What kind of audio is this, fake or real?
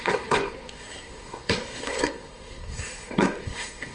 fake